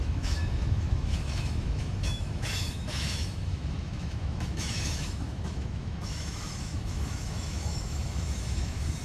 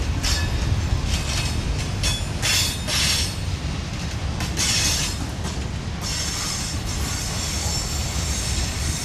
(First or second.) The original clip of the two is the second